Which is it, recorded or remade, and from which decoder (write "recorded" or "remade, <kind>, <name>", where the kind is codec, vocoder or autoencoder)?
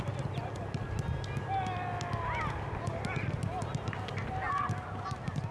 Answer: recorded